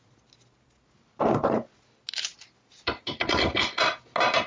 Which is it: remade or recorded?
recorded